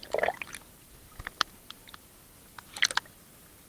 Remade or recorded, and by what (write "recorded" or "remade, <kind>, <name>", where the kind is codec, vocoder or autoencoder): recorded